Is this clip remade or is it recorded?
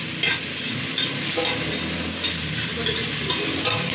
recorded